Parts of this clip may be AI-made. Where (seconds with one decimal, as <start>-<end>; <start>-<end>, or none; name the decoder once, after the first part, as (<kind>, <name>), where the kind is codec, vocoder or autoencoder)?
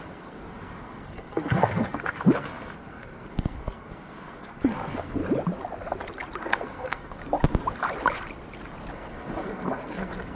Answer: 0.0-5.2 (codec, SNAC); 6.4-7.2; 8.9-10.4